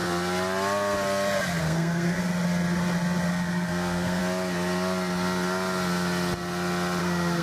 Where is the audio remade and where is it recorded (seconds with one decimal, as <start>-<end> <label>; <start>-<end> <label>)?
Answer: 0.0-1.6 recorded; 1.6-2.3 remade; 2.3-3.3 recorded; 3.3-4.2 remade; 4.2-7.0 recorded; 7.0-7.4 remade